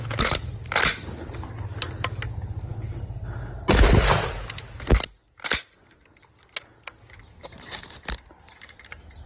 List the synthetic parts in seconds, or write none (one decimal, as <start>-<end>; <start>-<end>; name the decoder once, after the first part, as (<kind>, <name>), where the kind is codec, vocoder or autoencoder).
none